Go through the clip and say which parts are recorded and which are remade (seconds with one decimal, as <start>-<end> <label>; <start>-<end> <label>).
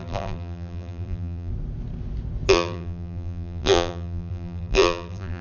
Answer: 0.0-1.5 remade; 1.5-2.5 recorded; 2.5-5.4 remade